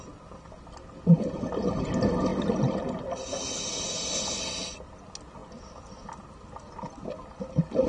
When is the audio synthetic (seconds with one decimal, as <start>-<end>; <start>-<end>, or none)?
none